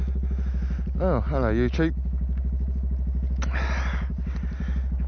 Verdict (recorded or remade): recorded